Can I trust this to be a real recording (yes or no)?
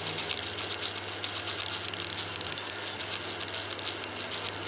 yes